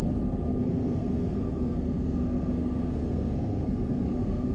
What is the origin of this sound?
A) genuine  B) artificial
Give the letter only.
B